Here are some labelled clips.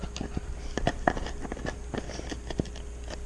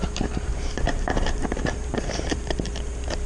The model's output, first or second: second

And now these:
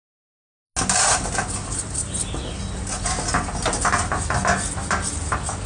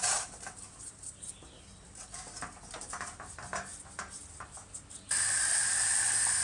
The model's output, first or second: second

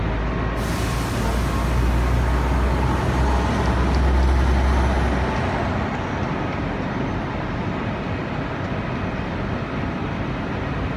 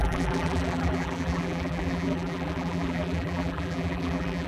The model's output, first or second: second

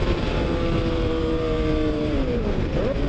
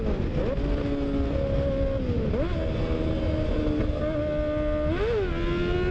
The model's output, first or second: first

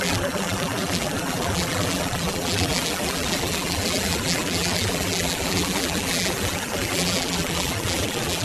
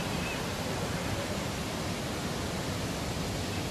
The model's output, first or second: first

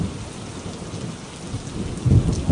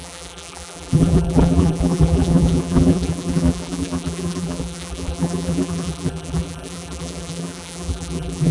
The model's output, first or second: second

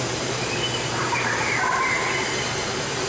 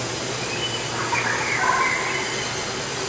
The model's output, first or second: first